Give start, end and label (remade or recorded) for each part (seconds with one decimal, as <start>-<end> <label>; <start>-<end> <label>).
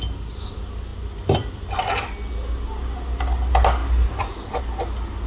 0.0-5.3 recorded